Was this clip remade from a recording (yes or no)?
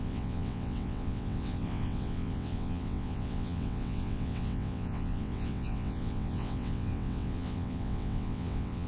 yes